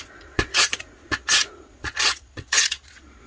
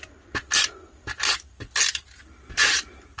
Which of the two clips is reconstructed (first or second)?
first